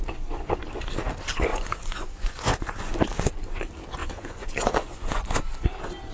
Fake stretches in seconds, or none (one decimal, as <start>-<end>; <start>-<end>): 1.5-2.9; 4.0-5.4